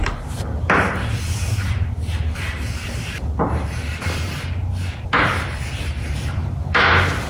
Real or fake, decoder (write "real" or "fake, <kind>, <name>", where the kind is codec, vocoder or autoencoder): fake, vocoder, BigVGAN v2